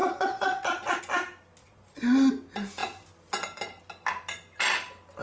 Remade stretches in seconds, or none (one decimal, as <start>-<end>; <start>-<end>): 0.0-1.0; 1.6-2.3